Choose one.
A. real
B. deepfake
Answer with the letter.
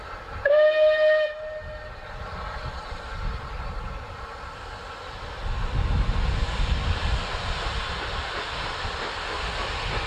A